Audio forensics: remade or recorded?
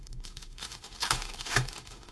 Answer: remade